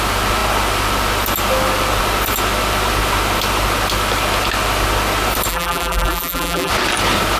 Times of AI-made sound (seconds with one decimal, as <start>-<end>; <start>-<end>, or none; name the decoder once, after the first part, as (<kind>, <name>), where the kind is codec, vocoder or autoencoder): 5.5-6.7 (vocoder, BigVGAN v2)